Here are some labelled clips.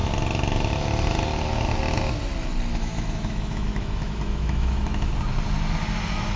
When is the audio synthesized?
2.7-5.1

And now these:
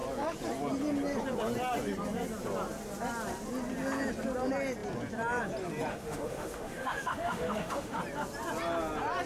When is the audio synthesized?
5.9-8.0

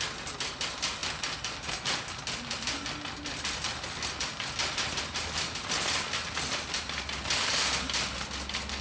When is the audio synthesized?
none

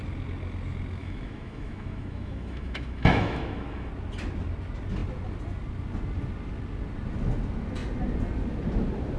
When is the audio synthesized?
1.0-3.9

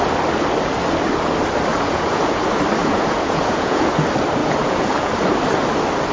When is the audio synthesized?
1.7-2.4; 2.8-3.9; 4.4-5.1